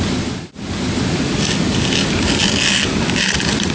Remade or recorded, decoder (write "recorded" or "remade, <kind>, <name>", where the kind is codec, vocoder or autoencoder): recorded